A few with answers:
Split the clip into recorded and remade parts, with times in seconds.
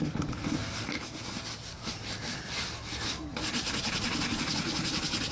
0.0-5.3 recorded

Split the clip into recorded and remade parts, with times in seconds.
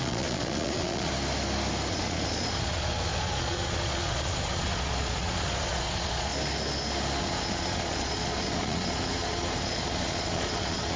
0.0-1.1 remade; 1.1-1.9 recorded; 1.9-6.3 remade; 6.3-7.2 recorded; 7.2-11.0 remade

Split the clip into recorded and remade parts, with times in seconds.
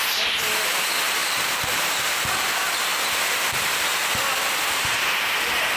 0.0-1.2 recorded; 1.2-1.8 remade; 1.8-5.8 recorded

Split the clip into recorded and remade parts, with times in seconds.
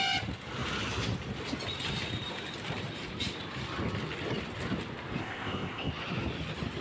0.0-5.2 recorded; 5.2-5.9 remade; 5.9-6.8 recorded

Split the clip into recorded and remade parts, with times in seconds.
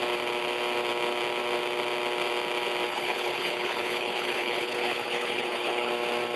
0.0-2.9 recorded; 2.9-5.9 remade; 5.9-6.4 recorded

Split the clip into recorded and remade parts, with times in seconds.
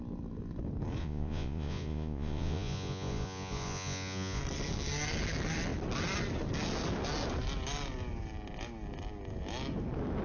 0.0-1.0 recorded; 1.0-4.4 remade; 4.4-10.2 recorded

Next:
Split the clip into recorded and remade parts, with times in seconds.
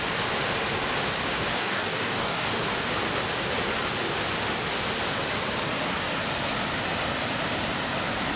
0.0-1.5 recorded; 1.5-2.5 remade; 2.5-8.4 recorded